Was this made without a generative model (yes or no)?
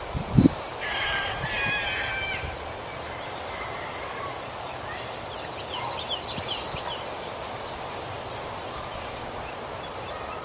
yes